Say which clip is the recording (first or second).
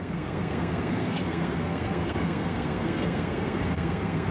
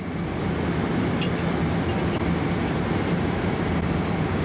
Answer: second